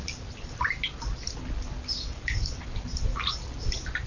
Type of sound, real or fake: real